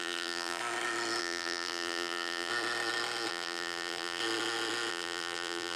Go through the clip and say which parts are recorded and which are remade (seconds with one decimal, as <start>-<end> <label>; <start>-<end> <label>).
0.0-0.6 remade; 0.6-1.2 recorded; 1.2-2.5 remade; 2.5-3.3 recorded; 3.3-4.2 remade; 4.2-4.9 recorded; 4.9-5.8 remade